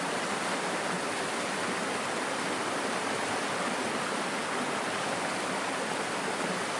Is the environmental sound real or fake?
real